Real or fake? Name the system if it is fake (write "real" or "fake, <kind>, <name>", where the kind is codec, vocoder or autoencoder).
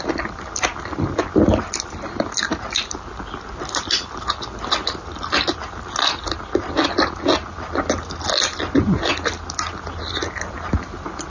real